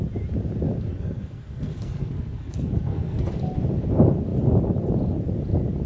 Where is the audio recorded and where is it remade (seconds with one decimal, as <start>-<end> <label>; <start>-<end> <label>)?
0.0-0.9 recorded; 0.9-3.3 remade; 3.3-5.9 recorded